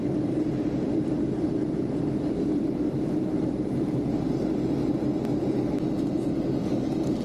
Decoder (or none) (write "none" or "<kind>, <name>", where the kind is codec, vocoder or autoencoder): none